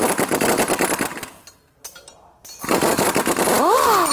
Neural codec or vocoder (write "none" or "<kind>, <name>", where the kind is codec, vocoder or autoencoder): none